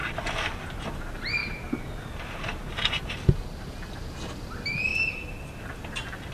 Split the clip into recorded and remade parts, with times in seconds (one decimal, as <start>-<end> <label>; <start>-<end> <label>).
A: 0.0-6.3 recorded